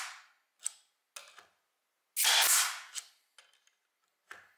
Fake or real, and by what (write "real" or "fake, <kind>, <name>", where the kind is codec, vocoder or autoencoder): real